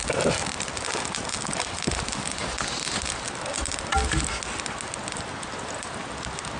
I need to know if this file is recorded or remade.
recorded